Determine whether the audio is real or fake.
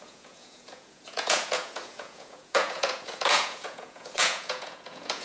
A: fake